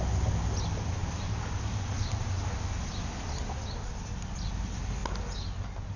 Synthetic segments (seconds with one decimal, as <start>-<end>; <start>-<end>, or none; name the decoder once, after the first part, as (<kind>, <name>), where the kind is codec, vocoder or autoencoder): none